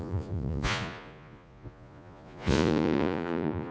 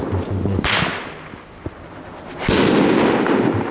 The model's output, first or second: first